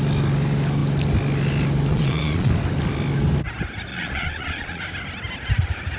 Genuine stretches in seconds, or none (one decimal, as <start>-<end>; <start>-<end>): 0.0-1.9; 2.5-3.9; 4.8-6.0